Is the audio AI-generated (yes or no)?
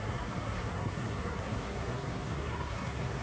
yes